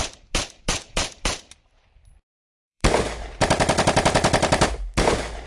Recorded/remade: remade